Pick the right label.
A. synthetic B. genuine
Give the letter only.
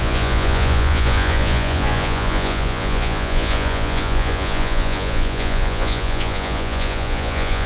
A